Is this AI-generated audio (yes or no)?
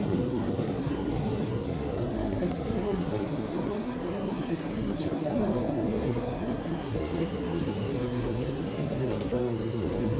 yes